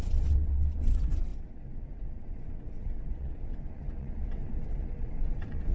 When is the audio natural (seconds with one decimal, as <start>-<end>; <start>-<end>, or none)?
none